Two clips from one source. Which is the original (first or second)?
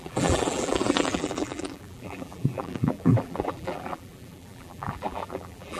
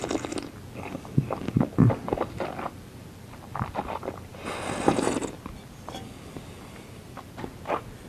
second